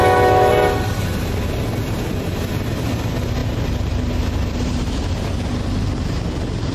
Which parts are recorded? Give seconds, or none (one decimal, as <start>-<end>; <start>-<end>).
0.5-6.7